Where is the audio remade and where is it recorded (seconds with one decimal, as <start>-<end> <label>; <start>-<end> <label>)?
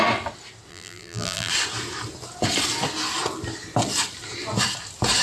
0.0-0.7 recorded; 0.7-1.5 remade; 1.5-5.2 recorded